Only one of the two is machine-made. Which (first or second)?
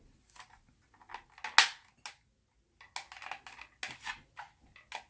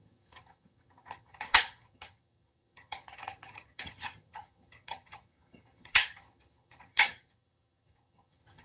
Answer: second